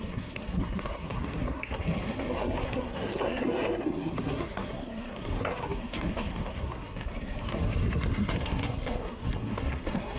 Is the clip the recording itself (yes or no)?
no